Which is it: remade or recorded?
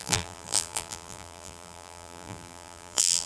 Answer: remade